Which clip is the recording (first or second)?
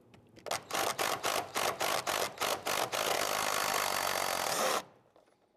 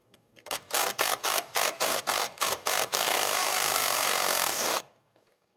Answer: first